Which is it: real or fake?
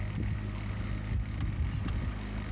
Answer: real